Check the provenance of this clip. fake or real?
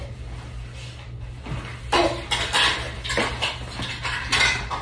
real